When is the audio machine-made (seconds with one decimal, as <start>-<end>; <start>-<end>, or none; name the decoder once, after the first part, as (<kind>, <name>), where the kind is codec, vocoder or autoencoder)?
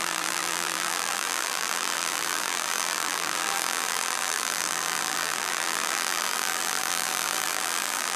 0.0-8.2 (vocoder, BigVGAN v2)